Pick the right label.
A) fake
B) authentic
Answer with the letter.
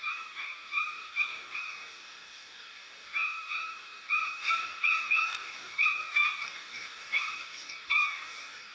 A